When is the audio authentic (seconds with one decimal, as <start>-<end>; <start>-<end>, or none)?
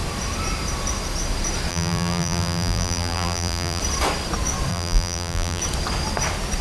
0.0-1.7; 3.8-4.7; 5.6-6.6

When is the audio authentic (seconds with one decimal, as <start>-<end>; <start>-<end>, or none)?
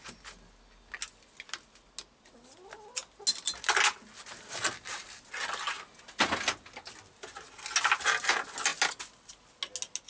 0.0-10.1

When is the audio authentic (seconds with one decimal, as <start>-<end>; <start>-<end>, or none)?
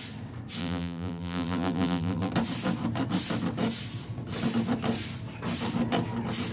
0.0-0.6; 2.3-6.5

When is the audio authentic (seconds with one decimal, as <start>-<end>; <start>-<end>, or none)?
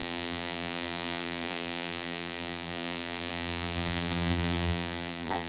none